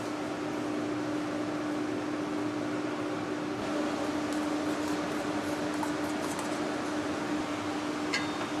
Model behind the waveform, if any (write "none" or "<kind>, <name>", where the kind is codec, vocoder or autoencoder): none